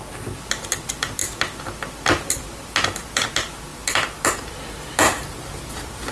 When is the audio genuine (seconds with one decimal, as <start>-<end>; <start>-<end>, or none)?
0.0-6.1